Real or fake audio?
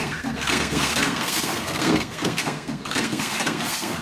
fake